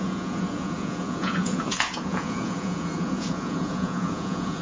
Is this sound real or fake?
fake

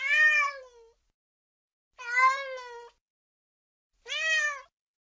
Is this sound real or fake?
real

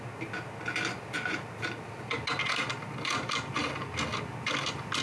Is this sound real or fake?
real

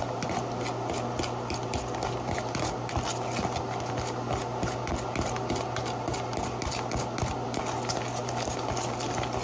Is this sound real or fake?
real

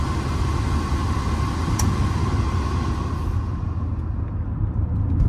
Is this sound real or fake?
real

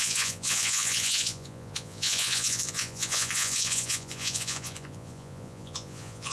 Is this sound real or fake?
fake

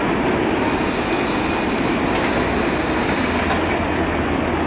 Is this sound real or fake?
real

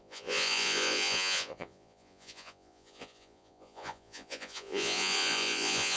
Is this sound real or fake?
fake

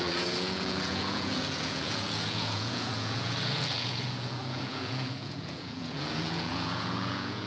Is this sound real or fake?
fake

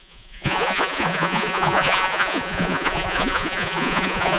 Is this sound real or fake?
fake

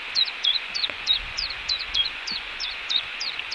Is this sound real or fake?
fake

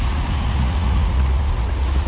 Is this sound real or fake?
fake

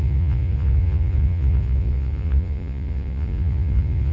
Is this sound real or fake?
fake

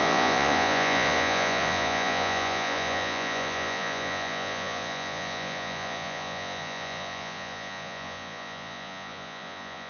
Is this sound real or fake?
fake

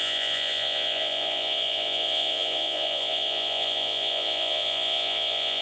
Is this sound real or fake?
fake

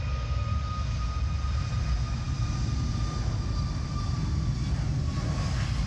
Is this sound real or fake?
real